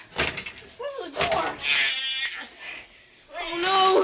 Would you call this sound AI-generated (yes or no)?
no